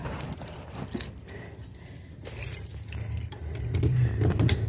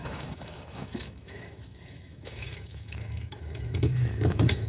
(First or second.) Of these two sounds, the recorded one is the first